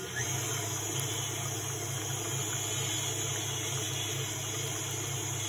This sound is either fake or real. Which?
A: real